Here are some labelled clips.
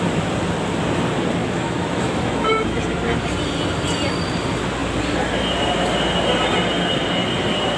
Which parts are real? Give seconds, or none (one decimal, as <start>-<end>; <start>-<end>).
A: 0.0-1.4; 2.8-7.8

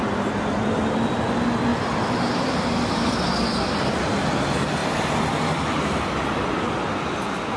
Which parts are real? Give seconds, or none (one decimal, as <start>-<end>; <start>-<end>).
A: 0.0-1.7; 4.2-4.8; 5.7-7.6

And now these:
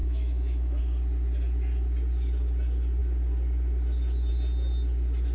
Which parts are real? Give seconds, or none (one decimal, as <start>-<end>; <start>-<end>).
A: 0.8-5.3